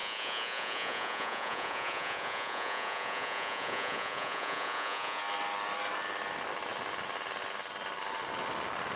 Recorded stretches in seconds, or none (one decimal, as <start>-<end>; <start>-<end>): 5.2-9.0